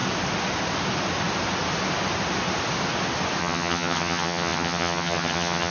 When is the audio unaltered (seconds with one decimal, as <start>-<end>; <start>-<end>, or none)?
0.0-3.4